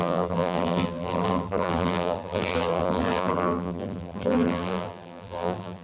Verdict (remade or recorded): remade